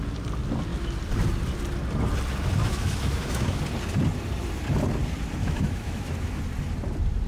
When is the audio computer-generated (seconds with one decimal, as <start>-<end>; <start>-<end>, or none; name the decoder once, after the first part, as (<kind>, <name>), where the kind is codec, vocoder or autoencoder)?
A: 2.6-3.6 (autoencoder, DAC-VAE); 5.4-6.4